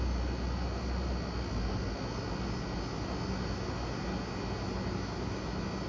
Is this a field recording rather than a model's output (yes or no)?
yes